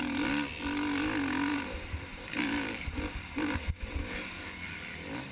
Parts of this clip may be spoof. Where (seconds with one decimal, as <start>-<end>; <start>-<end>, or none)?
1.5-4.7